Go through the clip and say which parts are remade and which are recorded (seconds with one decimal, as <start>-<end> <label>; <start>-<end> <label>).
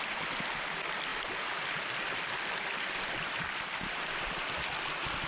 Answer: 0.0-5.3 recorded